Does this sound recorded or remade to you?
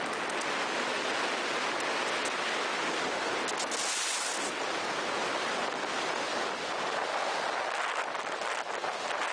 recorded